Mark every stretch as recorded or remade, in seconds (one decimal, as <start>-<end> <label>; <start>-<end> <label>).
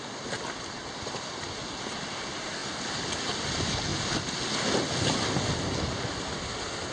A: 0.0-6.9 recorded